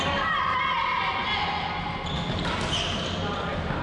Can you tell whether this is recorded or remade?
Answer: recorded